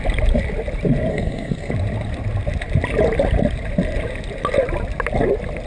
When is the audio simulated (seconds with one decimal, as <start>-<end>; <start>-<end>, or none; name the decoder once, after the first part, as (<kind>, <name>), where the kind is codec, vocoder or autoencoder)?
1.1-1.7 (codec, SNAC)